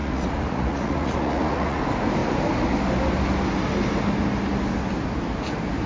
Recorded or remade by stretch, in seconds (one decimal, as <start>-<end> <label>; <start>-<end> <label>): 0.0-1.8 remade; 1.8-5.9 recorded